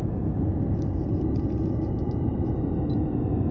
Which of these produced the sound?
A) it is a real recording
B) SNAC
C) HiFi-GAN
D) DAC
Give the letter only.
A